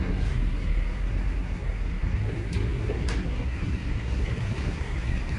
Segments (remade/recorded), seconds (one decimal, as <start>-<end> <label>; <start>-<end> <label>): 0.0-5.4 remade